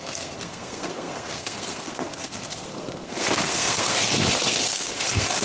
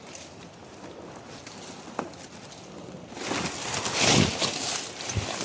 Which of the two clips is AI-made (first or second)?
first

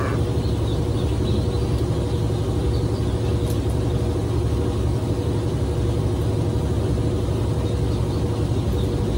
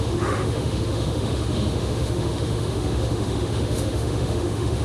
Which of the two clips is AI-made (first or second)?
second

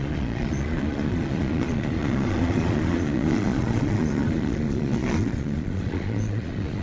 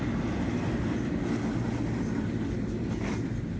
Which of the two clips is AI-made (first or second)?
first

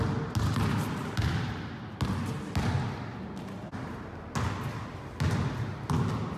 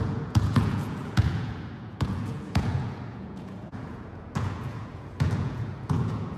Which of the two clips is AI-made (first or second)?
second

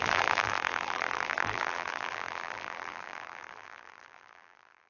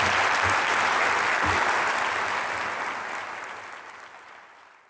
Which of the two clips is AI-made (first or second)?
first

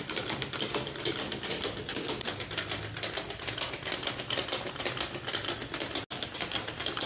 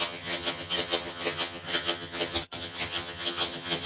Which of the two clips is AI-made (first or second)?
second